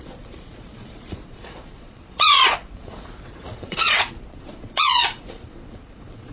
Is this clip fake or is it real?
fake